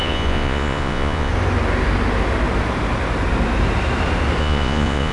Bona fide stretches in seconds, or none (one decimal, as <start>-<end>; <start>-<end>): 1.3-4.4